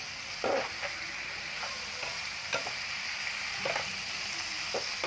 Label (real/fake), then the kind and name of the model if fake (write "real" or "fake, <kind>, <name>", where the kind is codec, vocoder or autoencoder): real